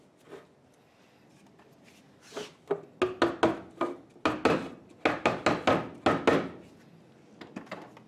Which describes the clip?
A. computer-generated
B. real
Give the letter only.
B